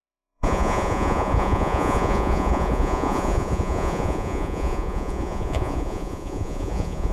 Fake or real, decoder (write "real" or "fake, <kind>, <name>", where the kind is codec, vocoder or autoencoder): fake, vocoder, Vocos